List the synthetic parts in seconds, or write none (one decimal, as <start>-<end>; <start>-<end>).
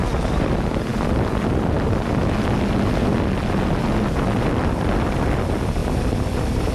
none